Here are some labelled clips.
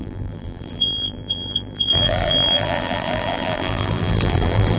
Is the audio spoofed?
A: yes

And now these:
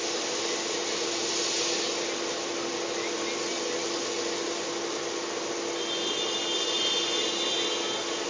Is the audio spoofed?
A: no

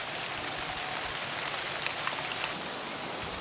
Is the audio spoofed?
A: no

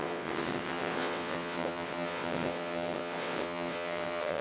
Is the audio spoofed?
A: yes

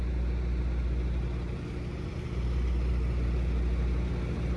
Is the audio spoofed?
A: no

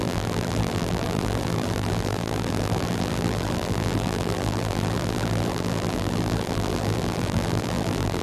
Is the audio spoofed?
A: yes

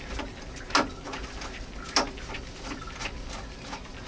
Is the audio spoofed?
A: no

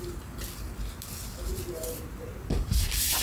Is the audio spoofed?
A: no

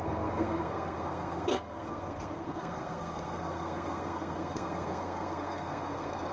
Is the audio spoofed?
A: yes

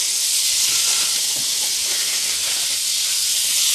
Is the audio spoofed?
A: no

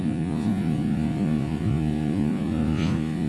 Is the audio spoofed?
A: yes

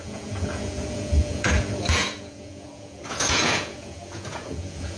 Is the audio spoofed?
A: yes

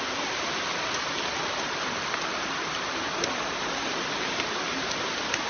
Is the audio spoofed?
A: no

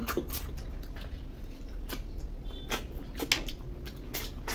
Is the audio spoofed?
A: no